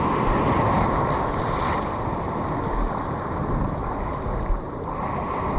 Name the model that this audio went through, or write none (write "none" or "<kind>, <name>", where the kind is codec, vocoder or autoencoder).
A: none